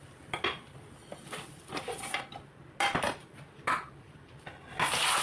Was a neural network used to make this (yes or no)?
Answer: no